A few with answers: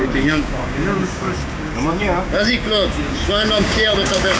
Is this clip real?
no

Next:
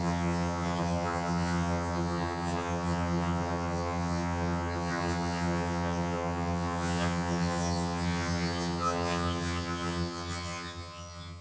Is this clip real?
no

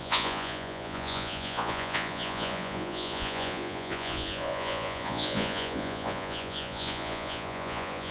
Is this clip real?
no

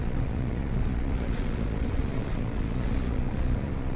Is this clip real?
no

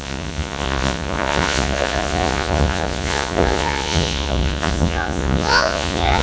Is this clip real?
no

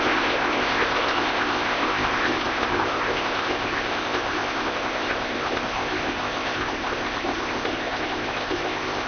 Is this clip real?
no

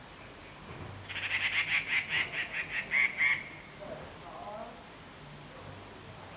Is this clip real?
yes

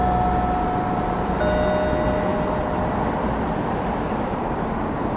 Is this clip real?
yes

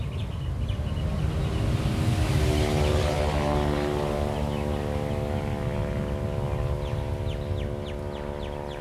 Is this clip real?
yes